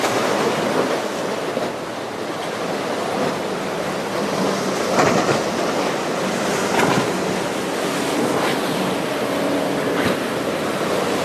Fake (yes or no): no